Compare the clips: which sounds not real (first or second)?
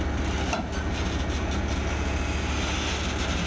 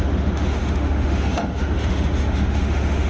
second